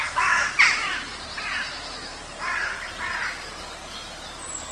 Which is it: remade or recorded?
recorded